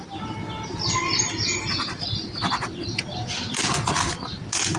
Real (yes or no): yes